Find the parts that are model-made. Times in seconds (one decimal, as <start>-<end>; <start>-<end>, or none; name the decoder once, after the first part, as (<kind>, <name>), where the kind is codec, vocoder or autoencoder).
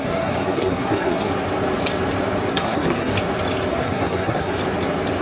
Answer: 0.0-1.3 (codec, SNAC); 2.5-3.1; 3.7-4.6